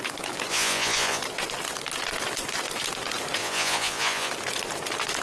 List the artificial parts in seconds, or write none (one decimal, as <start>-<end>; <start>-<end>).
0.5-1.2; 3.4-4.3